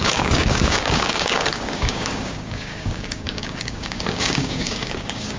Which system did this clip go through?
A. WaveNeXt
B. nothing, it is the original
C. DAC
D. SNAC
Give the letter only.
C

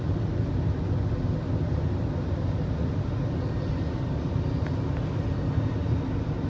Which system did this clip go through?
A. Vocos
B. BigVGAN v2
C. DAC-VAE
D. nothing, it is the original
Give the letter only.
D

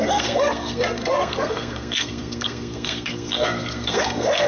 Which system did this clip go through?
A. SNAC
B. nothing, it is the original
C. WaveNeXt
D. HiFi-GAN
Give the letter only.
A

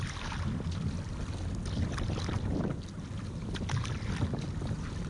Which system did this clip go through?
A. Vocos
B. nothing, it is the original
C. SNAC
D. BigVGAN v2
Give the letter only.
D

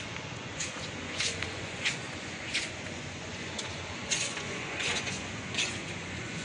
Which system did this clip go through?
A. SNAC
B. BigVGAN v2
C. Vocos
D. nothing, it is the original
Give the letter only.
C